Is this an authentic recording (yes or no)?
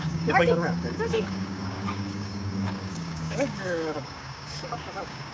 no